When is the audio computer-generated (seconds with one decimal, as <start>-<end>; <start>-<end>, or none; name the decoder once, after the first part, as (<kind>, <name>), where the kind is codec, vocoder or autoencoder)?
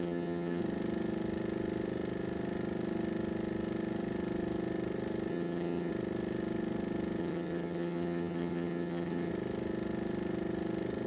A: 0.0-0.6 (vocoder, HiFi-GAN); 5.3-5.9; 7.2-9.3